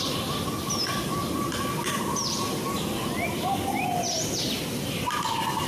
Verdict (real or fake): real